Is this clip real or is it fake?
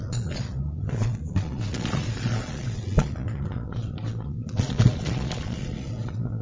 fake